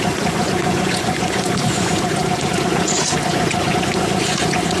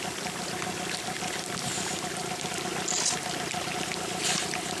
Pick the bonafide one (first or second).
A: second